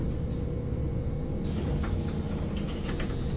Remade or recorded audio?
recorded